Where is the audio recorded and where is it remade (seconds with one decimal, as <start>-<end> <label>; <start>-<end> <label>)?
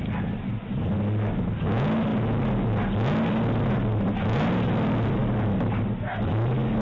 0.0-6.8 recorded